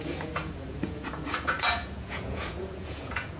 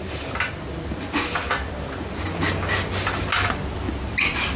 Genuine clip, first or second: second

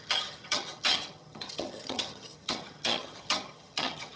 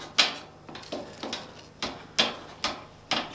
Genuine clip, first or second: second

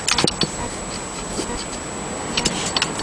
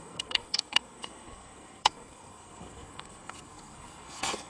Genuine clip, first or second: first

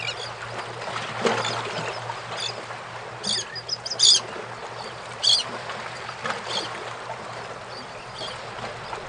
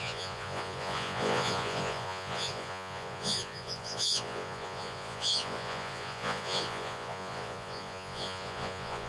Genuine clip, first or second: first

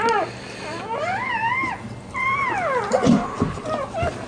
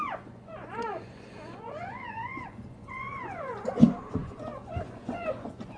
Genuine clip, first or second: first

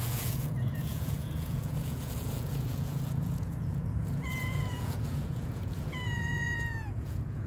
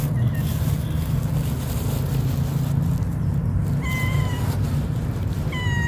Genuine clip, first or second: second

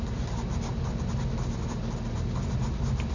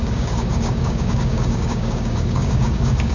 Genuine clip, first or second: first